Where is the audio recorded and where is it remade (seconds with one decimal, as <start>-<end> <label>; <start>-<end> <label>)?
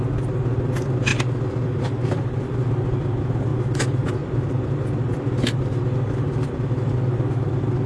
0.0-7.9 recorded